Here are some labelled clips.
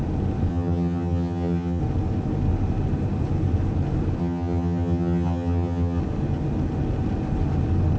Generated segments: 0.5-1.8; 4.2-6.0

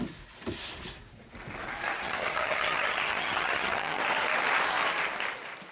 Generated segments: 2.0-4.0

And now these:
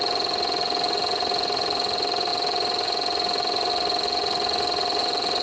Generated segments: none

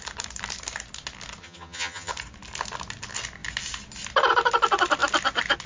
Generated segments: 1.4-2.1